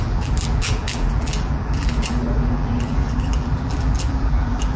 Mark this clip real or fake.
fake